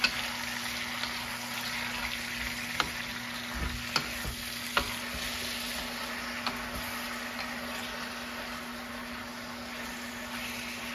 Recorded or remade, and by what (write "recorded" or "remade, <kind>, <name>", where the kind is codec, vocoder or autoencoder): recorded